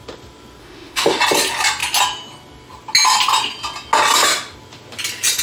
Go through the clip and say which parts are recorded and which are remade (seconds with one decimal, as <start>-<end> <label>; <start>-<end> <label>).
0.0-0.6 recorded; 0.6-1.2 remade; 1.2-5.4 recorded

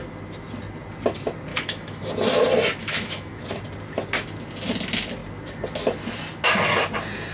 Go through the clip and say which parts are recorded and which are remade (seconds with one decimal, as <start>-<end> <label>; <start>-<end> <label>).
0.0-1.5 recorded; 1.5-2.1 remade; 2.1-2.8 recorded; 2.8-3.4 remade; 3.4-7.3 recorded

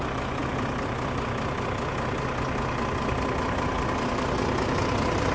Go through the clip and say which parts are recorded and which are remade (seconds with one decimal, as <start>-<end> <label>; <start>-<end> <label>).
0.0-5.3 recorded

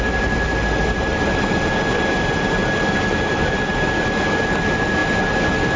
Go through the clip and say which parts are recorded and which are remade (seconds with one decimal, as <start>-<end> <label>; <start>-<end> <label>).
0.0-5.8 recorded